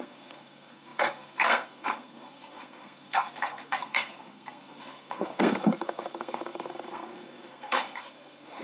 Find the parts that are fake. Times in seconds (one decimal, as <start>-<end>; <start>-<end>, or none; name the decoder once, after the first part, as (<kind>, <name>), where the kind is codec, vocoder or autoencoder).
0.0-8.6 (codec, SNAC)